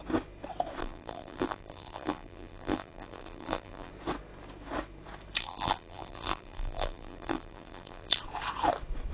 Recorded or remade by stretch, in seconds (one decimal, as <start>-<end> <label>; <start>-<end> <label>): 0.0-0.8 recorded; 0.8-3.9 remade; 3.9-5.4 recorded; 5.4-8.2 remade; 8.2-9.1 recorded